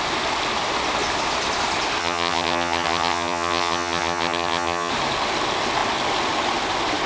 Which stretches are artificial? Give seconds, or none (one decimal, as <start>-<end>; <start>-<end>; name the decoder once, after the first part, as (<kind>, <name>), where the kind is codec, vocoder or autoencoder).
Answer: 2.0-4.9 (vocoder, HiFi-GAN)